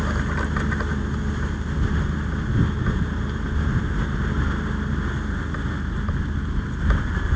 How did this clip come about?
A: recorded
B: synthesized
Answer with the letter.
A